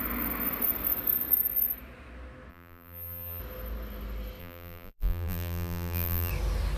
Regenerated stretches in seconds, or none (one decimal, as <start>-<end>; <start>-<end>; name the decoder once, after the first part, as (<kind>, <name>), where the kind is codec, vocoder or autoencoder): 2.5-3.4 (vocoder, BigVGAN v2); 4.4-6.3